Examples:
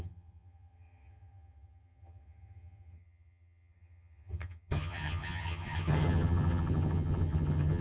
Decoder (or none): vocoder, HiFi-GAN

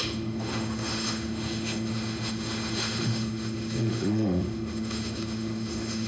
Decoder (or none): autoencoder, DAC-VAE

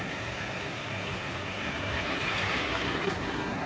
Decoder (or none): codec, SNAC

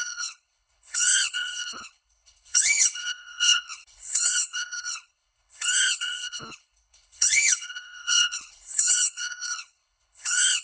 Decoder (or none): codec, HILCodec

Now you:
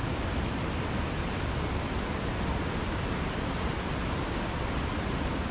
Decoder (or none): none